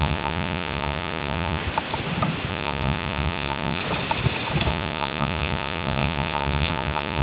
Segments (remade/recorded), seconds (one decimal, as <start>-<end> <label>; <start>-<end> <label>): 0.0-1.6 remade; 1.6-2.5 recorded; 2.5-3.8 remade; 3.8-4.7 recorded; 4.7-7.2 remade